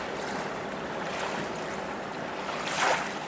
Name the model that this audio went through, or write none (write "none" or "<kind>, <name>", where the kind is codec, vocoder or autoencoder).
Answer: none